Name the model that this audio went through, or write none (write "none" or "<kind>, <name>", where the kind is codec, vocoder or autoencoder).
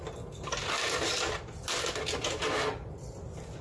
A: none